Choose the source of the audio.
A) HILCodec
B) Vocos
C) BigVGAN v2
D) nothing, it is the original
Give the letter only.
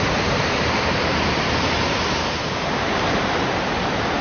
C